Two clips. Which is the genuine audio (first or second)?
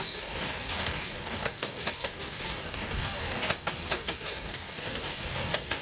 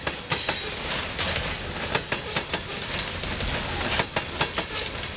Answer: second